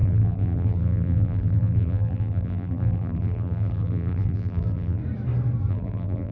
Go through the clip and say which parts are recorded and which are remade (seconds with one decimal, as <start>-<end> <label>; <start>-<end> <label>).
0.0-5.0 remade; 5.0-5.7 recorded; 5.7-6.3 remade